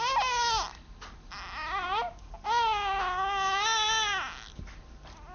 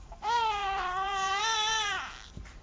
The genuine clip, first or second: first